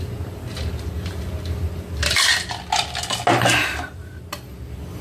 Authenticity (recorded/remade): recorded